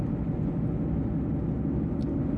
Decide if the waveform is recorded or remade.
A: recorded